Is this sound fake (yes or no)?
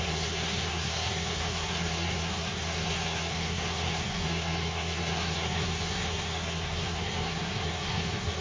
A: yes